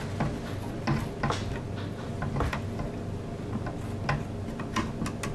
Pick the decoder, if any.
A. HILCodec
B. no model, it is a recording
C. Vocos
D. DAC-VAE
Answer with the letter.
B